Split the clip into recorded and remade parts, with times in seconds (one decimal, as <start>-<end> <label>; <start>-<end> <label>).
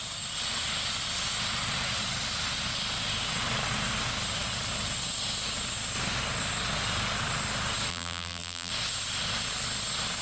0.0-7.9 recorded; 7.9-8.7 remade; 8.7-10.2 recorded